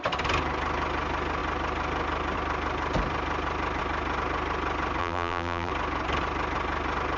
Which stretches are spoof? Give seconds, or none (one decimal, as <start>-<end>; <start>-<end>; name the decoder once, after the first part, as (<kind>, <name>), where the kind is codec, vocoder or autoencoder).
5.0-5.7 (vocoder, BigVGAN v2)